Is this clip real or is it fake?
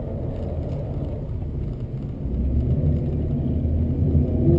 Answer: real